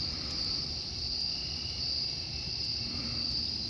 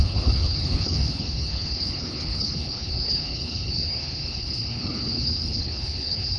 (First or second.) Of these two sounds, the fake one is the second